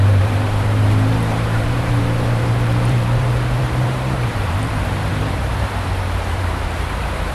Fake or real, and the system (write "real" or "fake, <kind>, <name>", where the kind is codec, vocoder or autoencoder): fake, vocoder, BigVGAN v2